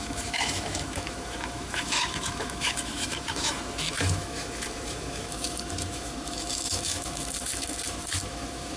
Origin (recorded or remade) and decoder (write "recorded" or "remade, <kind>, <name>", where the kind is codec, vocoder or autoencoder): remade, autoencoder, DAC-VAE